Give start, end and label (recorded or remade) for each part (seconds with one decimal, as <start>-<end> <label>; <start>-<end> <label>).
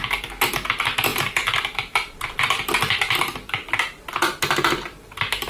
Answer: 0.0-5.5 recorded